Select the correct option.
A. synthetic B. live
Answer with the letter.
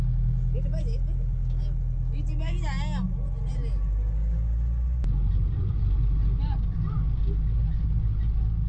B